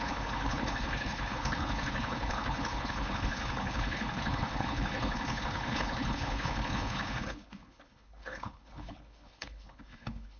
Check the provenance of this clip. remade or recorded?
remade